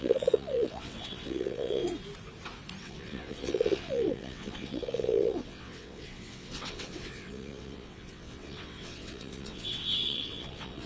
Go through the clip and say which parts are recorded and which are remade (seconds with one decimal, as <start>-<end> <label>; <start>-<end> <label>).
0.0-1.8 remade; 1.8-2.8 recorded; 2.8-10.9 remade

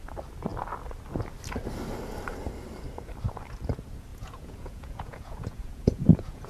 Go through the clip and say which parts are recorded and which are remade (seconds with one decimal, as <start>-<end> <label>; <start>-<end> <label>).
0.0-4.1 recorded; 4.1-6.5 remade

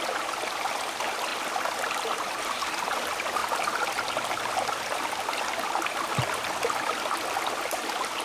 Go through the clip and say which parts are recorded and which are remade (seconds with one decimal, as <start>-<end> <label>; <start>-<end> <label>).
0.0-8.2 recorded